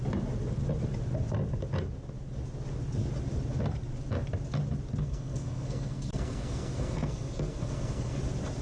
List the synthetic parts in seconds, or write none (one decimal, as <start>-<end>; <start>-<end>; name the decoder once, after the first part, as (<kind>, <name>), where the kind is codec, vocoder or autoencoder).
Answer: 5.0-8.2 (codec, SNAC)